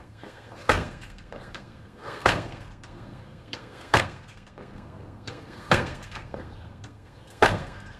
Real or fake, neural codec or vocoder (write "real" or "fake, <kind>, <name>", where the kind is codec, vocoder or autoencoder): fake, codec, SNAC